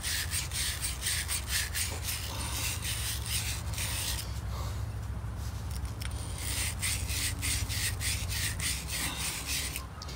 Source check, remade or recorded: recorded